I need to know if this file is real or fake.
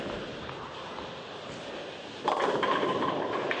real